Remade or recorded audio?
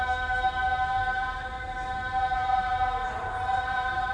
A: recorded